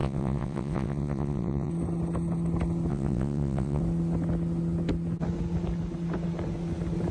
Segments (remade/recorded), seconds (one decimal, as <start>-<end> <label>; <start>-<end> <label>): 0.0-1.7 remade; 1.7-2.9 recorded; 2.9-3.8 remade; 3.8-7.1 recorded